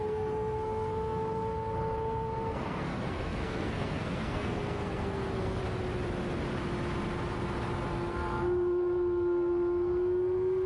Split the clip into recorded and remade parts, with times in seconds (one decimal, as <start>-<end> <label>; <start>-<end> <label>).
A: 0.0-5.6 remade; 5.6-8.1 recorded; 8.1-10.7 remade